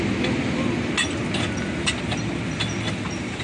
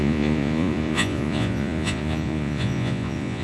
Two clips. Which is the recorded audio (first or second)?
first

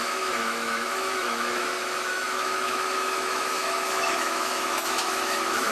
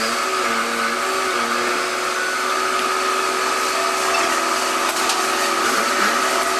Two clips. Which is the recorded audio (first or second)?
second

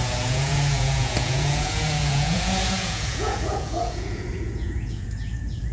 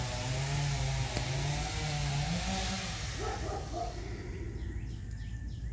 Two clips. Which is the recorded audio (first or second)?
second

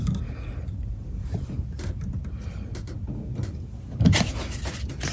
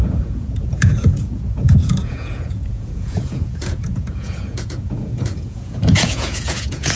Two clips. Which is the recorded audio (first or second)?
first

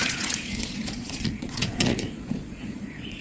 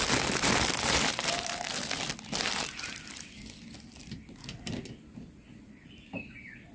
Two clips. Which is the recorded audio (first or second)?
second